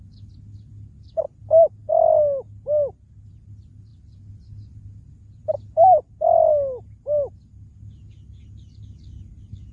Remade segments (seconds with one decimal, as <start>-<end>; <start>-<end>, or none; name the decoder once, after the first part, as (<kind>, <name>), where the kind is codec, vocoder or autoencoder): none